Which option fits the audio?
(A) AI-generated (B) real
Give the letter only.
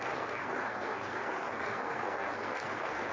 A